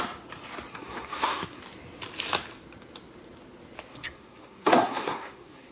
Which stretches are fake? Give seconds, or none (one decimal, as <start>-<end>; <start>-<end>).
0.7-1.6; 3.9-5.7